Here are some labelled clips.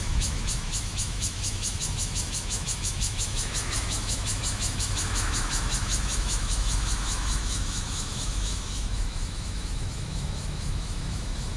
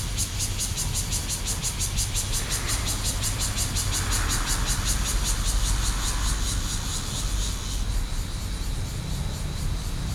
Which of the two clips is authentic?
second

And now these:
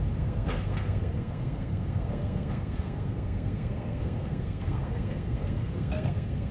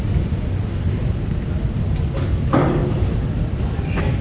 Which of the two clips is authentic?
second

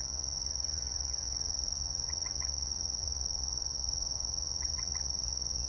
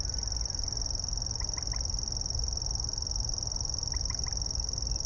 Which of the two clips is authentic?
second